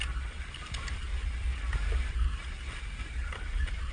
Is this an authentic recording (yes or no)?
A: yes